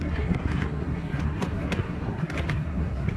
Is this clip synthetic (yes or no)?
yes